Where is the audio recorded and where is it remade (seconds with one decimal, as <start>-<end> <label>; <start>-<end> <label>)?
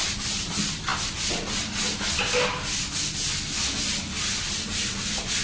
0.0-5.4 recorded